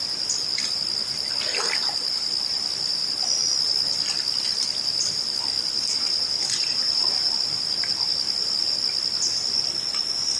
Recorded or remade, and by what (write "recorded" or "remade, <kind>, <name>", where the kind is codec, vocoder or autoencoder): recorded